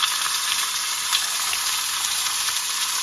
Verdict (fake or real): fake